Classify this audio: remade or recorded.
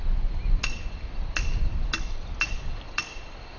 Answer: recorded